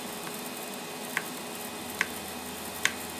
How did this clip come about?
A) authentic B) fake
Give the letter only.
A